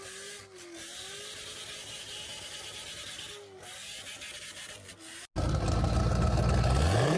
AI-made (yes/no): no